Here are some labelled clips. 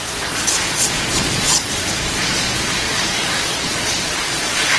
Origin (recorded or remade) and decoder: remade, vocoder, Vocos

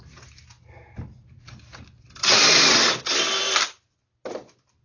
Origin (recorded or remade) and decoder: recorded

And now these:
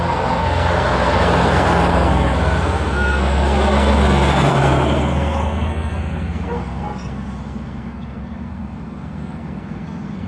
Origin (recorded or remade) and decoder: remade, codec, SNAC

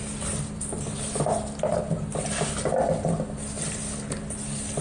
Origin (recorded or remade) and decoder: recorded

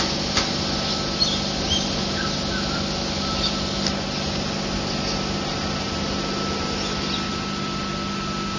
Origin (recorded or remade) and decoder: recorded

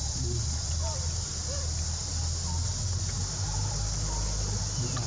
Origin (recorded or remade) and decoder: recorded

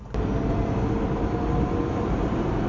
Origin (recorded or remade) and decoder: recorded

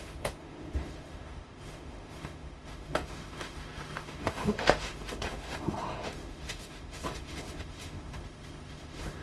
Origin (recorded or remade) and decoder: remade, autoencoder, DAC-VAE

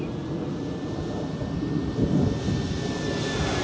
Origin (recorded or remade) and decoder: recorded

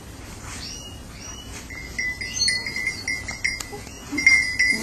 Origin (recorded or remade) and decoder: recorded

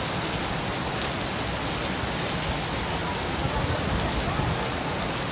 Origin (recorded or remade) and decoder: recorded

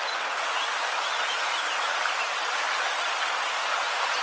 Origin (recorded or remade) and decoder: recorded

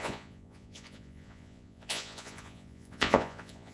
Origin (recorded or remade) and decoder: remade, vocoder, Vocos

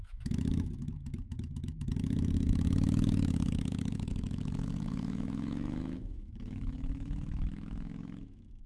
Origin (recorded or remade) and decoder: remade, autoencoder, DAC-VAE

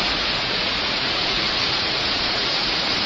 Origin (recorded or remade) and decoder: remade, vocoder, Vocos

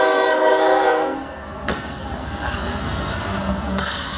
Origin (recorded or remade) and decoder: remade, codec, SNAC